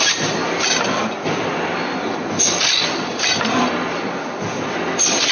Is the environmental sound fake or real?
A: real